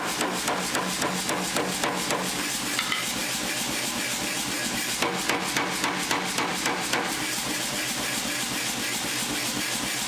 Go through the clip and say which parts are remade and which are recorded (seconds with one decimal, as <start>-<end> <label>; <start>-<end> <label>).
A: 0.0-6.5 recorded; 6.5-8.2 remade; 8.2-10.1 recorded